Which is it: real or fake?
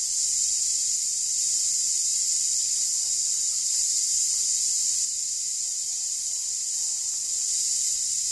real